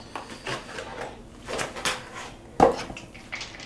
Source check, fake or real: real